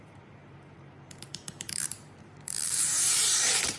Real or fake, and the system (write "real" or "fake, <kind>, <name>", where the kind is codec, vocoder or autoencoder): fake, vocoder, BigVGAN v2